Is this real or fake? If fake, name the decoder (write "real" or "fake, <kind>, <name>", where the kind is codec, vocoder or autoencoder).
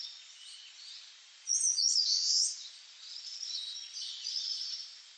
fake, vocoder, Vocos